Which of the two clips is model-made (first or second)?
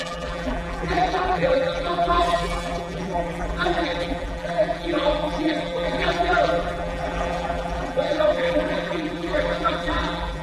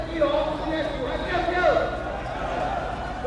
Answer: first